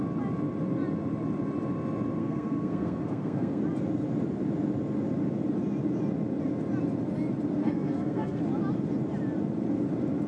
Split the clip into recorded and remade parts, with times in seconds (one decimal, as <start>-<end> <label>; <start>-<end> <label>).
0.0-2.2 recorded; 2.2-3.6 remade; 3.6-7.6 recorded; 7.6-8.4 remade; 8.4-10.3 recorded